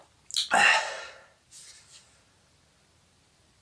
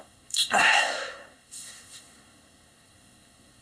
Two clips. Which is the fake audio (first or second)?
second